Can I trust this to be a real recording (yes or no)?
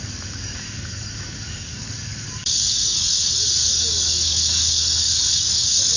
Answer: no